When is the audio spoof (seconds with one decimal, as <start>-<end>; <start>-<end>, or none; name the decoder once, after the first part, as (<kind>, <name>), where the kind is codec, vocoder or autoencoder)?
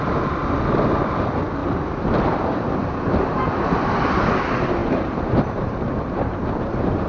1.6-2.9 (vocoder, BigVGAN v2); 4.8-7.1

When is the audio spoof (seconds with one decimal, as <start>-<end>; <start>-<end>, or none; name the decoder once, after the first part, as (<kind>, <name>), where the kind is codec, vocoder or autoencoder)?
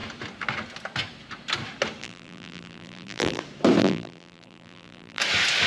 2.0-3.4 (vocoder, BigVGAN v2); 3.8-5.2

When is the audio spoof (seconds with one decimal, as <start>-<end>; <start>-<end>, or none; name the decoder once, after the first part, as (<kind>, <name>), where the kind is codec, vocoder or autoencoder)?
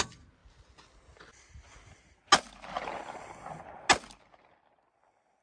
none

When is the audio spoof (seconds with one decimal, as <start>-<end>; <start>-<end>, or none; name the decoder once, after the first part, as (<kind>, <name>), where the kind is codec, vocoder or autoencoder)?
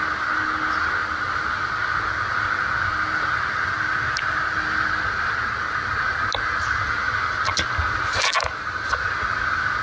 none